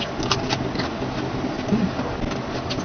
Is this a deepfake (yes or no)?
no